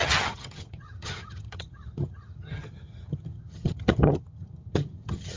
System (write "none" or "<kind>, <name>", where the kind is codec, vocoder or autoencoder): vocoder, HiFi-GAN